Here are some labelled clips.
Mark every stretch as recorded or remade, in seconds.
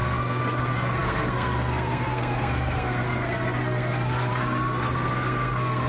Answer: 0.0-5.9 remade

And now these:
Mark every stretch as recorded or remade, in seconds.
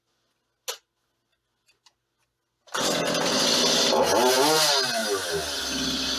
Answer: 0.0-6.2 recorded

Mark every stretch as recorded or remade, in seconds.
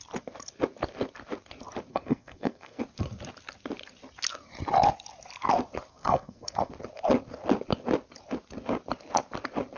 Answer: 0.0-1.9 recorded; 1.9-2.8 remade; 2.8-5.9 recorded; 5.9-6.7 remade; 6.7-9.8 recorded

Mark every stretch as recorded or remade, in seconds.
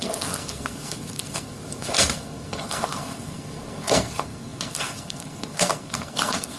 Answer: 0.0-6.6 remade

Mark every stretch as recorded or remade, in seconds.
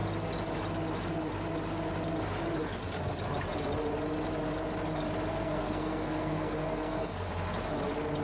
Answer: 0.0-5.3 recorded; 5.3-7.3 remade; 7.3-8.2 recorded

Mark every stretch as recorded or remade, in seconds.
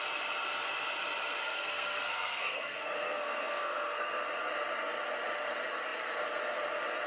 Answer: 0.0-1.4 recorded; 1.4-4.1 remade; 4.1-7.1 recorded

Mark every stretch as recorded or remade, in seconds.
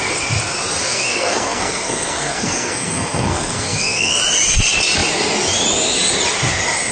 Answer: 0.0-0.8 recorded; 0.8-4.2 remade; 4.2-6.9 recorded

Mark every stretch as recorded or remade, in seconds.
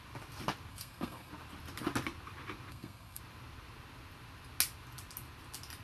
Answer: 0.0-0.7 recorded; 0.7-1.3 remade; 1.3-2.7 recorded; 2.7-3.2 remade; 3.2-5.8 recorded